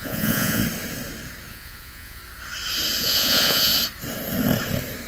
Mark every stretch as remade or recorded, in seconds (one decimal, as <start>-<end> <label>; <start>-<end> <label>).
0.0-0.6 remade; 0.6-1.5 recorded; 1.5-2.2 remade; 2.2-3.0 recorded; 3.0-3.7 remade; 3.7-5.1 recorded